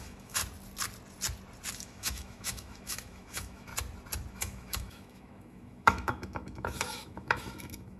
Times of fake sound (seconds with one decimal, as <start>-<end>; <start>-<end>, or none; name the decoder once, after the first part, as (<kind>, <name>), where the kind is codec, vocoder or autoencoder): 0.0-0.4 (autoencoder, DAC-VAE); 1.7-3.7; 4.3-8.0